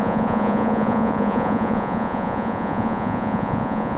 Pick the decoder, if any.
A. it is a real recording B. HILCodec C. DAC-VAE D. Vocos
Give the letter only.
D